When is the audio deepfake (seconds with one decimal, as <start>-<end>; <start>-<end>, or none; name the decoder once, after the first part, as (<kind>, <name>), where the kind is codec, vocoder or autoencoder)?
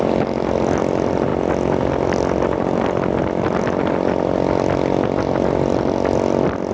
none